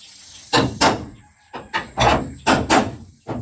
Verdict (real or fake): real